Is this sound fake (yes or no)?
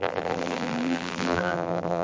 yes